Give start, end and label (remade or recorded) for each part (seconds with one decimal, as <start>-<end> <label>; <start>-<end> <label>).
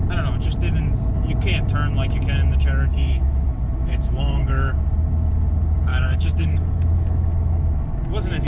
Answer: 0.0-2.9 recorded; 2.9-4.7 remade; 4.7-5.9 recorded; 5.9-7.8 remade; 7.8-8.5 recorded